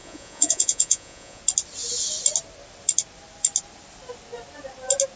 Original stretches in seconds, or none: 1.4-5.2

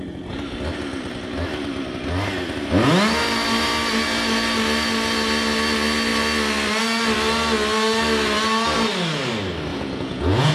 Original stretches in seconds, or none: 0.0-9.7